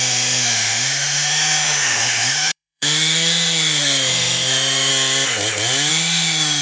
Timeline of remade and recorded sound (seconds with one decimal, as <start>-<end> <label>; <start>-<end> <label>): 0.0-4.9 remade; 4.9-5.9 recorded; 5.9-6.6 remade